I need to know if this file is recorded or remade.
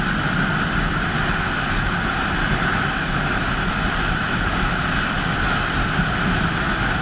recorded